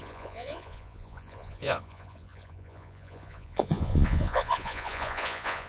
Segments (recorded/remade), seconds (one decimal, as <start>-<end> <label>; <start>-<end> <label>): 0.0-5.7 remade